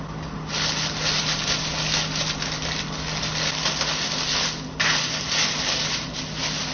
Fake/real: real